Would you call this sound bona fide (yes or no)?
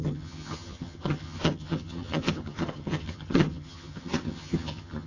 no